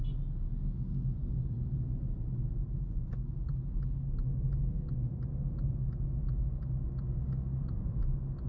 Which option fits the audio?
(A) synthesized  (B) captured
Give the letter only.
B